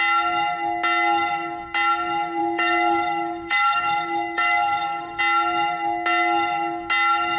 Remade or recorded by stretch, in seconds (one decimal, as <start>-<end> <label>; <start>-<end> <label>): 0.0-2.4 recorded; 2.4-5.2 remade; 5.2-7.4 recorded